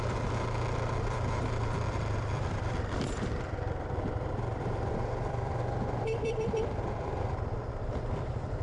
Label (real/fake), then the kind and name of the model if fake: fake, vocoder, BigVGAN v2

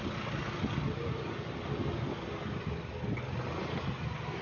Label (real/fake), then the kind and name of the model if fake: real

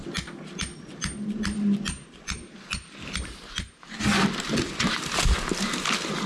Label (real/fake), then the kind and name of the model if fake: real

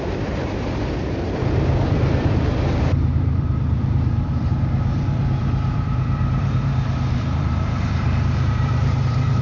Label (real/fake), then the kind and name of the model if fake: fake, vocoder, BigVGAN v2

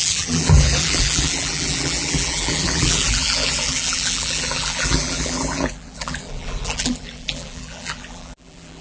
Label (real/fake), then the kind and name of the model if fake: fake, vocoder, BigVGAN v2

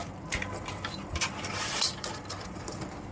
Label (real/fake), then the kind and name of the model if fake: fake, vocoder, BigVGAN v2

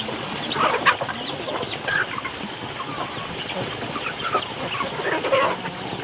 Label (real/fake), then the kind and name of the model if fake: real